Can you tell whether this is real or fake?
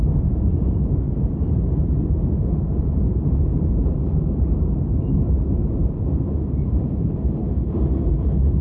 fake